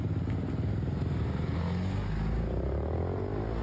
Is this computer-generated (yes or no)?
no